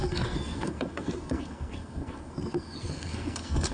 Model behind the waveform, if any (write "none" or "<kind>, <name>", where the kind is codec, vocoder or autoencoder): codec, SNAC